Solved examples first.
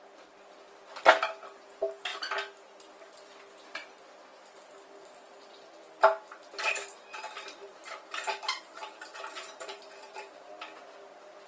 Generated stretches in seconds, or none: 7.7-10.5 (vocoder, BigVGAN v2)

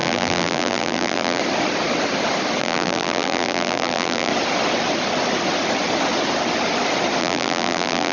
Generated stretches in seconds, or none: 0.0-1.4 (vocoder, BigVGAN v2); 2.6-4.3; 7.2-8.1

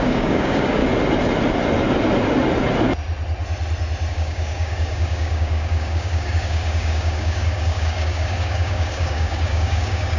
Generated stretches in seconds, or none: 0.0-0.8 (codec, DAC); 4.1-10.2